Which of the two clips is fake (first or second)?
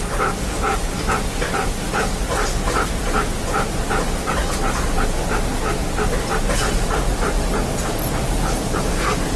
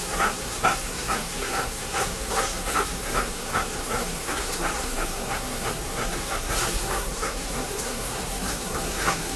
second